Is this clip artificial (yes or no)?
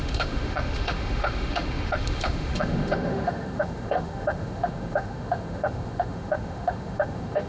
yes